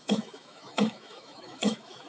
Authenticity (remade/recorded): remade